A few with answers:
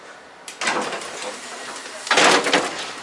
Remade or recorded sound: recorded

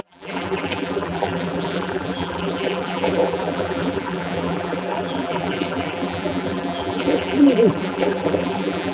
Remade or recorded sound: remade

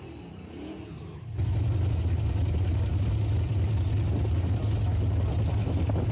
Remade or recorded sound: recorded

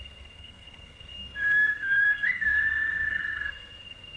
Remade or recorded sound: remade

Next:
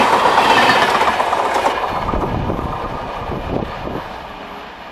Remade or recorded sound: recorded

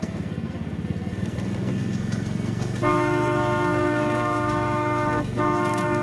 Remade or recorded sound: remade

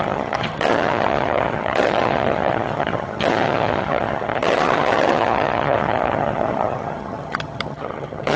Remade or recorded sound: remade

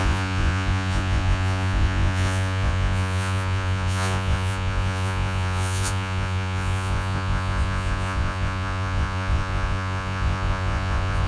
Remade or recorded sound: remade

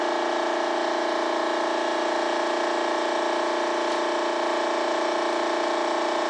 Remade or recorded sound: recorded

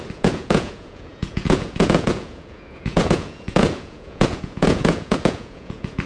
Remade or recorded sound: remade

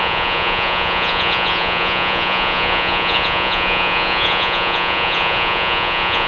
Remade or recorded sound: remade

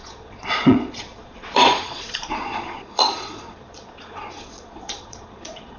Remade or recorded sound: remade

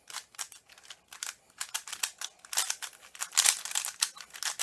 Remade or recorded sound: recorded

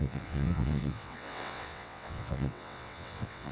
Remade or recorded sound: remade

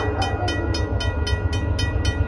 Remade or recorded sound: recorded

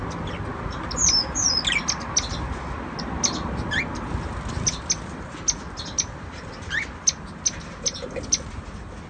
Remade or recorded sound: recorded